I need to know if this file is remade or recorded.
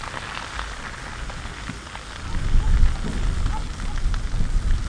recorded